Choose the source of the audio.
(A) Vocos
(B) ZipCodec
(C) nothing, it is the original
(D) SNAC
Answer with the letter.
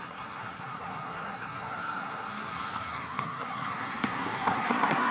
D